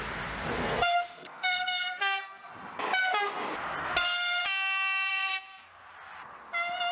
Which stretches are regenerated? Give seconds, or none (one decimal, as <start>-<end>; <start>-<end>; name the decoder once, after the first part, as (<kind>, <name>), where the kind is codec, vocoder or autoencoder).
0.6-2.5 (codec, SNAC); 3.8-4.4; 5.1-5.8